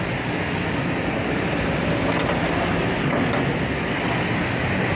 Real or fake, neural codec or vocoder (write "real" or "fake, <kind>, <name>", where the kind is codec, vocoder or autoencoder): real